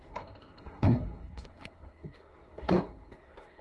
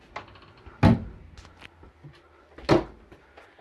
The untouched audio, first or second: second